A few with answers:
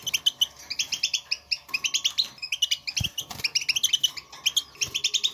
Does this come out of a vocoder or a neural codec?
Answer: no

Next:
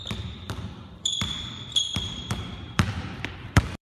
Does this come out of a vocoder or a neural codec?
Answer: yes